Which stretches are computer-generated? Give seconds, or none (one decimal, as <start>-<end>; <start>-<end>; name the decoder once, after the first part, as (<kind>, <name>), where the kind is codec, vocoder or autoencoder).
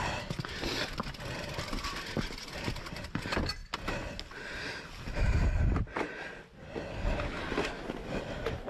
none